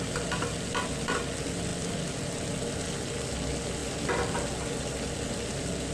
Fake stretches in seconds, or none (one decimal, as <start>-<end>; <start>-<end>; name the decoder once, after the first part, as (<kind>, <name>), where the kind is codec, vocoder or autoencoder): none